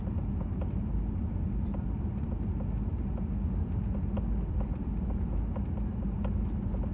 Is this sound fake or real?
real